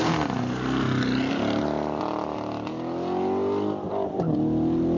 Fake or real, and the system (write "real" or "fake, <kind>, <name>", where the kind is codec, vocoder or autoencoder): real